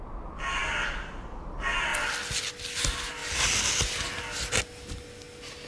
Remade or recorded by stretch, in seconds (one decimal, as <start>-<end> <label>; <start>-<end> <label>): 0.0-5.7 recorded